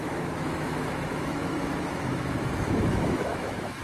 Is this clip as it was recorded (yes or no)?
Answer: no